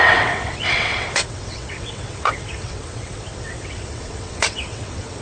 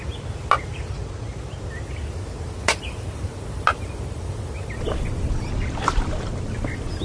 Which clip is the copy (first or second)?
first